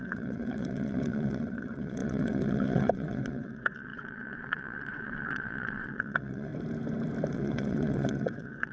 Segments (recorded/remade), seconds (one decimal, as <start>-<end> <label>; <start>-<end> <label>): 0.0-6.5 remade; 6.5-7.3 recorded; 7.3-8.7 remade